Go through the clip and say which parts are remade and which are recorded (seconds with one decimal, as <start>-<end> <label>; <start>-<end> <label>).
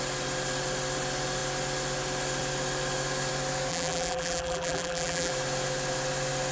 0.0-3.7 recorded; 3.7-5.3 remade; 5.3-6.5 recorded